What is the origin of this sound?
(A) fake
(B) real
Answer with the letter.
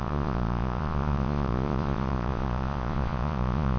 A